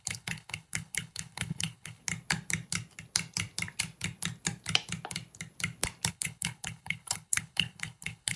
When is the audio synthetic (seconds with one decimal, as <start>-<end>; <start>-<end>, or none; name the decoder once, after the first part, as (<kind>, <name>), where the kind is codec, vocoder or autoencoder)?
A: 0.0-2.0 (codec, HILCodec); 6.1-8.4